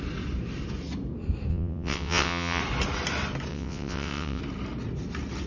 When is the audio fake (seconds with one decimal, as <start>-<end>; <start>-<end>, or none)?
1.5-2.6; 3.5-4.4